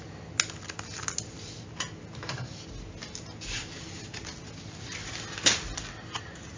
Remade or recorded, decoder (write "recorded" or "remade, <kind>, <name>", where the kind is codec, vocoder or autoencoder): recorded